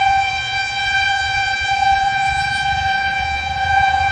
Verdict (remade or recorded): remade